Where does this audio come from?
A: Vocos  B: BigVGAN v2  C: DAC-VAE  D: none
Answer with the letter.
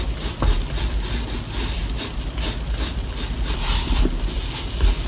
D